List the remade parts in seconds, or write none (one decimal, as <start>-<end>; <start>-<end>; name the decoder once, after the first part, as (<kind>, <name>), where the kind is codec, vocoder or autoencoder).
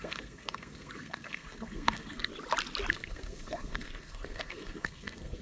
0.0-2.3 (codec, SNAC); 2.9-5.4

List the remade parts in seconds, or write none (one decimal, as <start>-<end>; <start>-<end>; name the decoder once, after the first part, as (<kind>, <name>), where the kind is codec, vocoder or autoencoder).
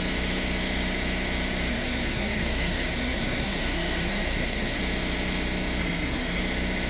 1.7-4.8 (codec, SNAC); 5.8-6.4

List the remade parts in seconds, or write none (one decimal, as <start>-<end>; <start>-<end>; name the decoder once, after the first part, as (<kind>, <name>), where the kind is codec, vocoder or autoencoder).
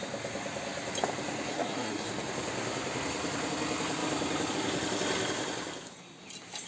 1.5-2.1 (codec, SNAC)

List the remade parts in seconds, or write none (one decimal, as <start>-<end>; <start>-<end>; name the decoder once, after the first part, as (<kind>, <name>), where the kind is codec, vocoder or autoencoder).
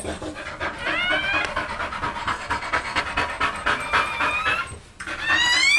2.2-3.0 (codec, SNAC)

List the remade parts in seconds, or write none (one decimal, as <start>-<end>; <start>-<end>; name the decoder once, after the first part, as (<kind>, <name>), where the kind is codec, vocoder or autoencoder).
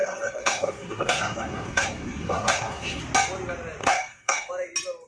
0.0-3.0 (codec, SNAC); 3.8-4.5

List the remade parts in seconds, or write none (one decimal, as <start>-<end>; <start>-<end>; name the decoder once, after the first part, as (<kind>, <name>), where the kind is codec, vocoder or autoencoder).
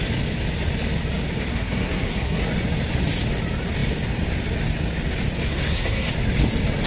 1.5-2.4 (codec, SNAC); 5.5-6.1